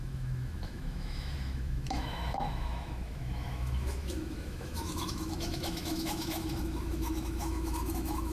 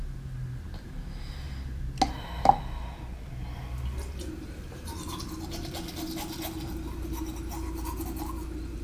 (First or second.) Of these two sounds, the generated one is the first